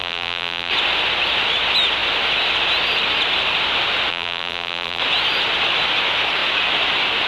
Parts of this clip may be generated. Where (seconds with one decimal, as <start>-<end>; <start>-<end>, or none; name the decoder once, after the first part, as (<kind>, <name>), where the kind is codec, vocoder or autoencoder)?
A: 0.0-0.7 (vocoder, BigVGAN v2); 4.1-5.0